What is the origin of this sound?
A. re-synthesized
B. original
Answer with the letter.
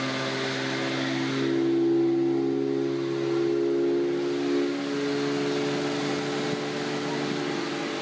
B